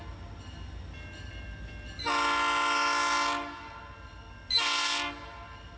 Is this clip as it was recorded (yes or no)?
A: yes